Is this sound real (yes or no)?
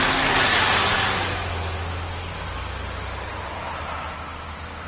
yes